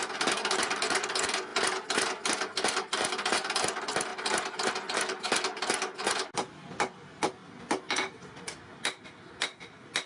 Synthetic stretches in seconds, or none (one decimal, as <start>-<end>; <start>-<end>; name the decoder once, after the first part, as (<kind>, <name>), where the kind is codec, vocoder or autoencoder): none